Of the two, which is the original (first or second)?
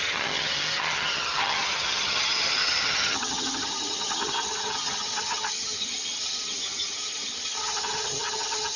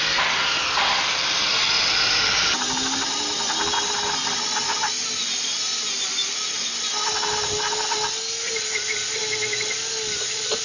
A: second